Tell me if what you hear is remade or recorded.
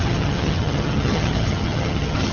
remade